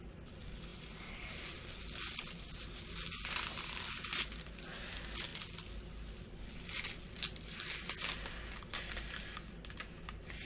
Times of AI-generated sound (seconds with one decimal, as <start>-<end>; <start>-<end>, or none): none